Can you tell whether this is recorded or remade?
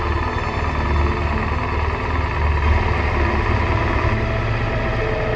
recorded